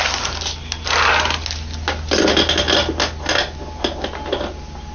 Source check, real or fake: real